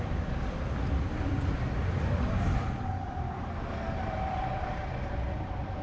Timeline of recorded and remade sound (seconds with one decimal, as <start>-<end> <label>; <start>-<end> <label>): 0.0-1.8 recorded; 1.8-5.1 remade; 5.1-5.8 recorded